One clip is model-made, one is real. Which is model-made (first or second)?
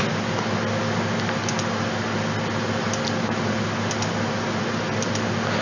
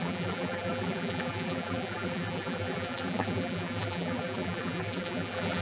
second